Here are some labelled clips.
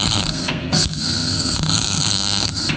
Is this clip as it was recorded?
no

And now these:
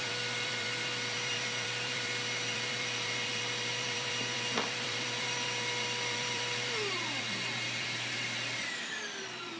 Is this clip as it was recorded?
no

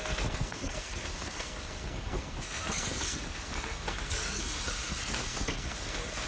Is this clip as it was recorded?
no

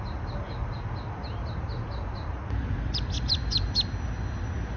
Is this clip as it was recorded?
yes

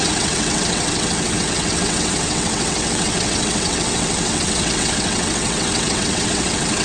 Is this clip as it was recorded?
no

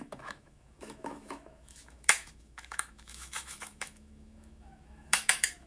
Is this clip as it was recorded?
no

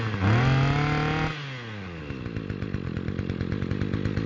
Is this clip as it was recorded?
yes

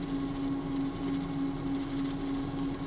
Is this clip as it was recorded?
yes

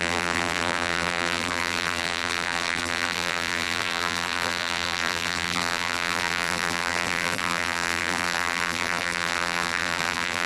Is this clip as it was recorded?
no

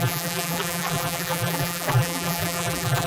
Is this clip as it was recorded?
no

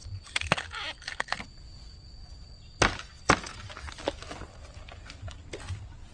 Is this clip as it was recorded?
yes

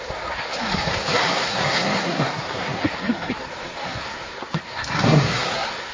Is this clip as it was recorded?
no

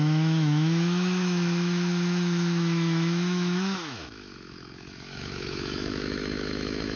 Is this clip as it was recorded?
no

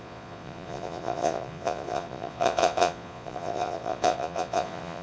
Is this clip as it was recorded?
no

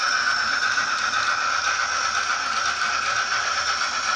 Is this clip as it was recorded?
yes